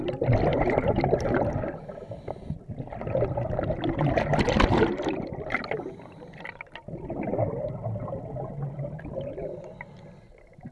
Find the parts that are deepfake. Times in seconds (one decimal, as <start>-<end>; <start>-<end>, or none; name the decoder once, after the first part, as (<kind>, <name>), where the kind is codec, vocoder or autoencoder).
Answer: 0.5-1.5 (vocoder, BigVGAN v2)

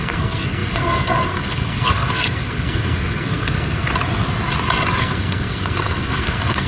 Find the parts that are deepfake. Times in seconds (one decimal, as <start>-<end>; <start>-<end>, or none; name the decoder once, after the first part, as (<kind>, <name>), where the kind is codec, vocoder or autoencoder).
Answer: 0.0-3.9 (codec, SNAC); 5.0-6.7

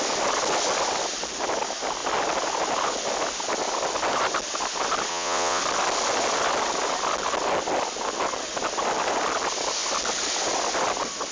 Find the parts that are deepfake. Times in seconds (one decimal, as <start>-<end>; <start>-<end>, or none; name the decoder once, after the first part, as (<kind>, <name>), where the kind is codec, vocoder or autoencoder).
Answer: 5.1-5.6 (vocoder, WaveNeXt)

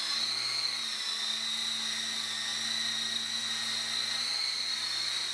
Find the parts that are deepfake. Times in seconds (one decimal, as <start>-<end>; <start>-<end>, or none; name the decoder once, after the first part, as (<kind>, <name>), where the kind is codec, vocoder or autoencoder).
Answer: none

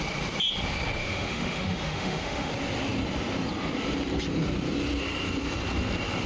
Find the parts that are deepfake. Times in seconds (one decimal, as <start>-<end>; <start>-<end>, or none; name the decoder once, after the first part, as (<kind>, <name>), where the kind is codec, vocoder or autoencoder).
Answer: 1.0-2.5 (autoencoder, DAC-VAE)

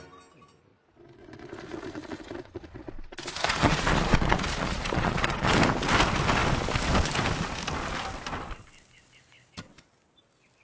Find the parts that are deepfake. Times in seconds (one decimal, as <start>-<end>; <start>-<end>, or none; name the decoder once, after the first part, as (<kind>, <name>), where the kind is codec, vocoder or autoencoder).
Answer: 0.7-5.6 (vocoder, Vocos)

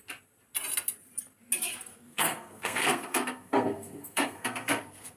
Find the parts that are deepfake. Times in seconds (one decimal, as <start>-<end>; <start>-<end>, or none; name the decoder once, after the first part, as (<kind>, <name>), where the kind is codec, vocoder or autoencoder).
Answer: 1.9-5.2 (codec, SNAC)